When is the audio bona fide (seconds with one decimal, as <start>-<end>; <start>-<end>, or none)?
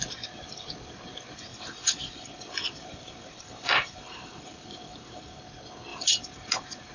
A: 0.0-1.5; 5.4-5.9